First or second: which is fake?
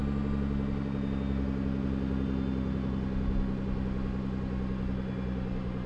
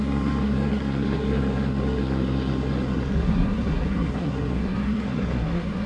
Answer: second